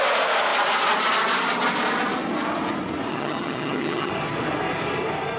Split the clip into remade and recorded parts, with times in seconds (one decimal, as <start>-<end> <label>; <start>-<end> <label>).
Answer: 0.0-3.1 recorded; 3.1-4.1 remade; 4.1-5.4 recorded